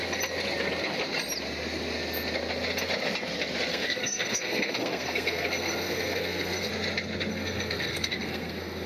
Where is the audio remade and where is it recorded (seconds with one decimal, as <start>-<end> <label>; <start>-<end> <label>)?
0.0-3.7 recorded; 3.7-6.7 remade; 6.7-7.3 recorded; 7.3-8.9 remade